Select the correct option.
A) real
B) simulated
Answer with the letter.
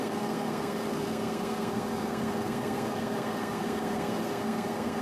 B